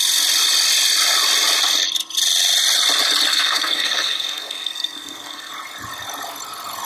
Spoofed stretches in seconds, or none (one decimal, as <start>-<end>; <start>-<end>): 3.3-5.5